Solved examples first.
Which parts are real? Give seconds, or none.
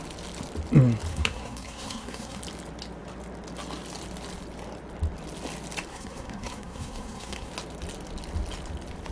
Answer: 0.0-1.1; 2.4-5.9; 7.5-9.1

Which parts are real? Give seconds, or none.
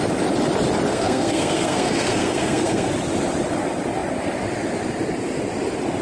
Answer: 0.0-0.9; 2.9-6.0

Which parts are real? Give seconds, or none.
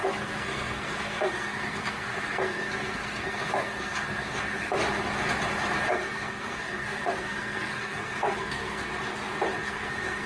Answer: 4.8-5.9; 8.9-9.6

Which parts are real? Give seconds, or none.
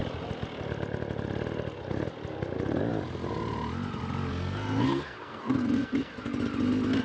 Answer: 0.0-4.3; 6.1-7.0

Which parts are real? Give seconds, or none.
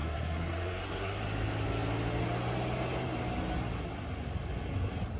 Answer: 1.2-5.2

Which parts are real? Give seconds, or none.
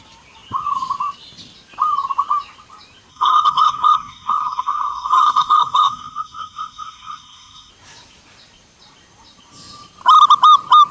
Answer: 0.0-3.1; 7.7-10.9